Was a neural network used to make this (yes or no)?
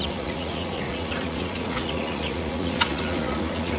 yes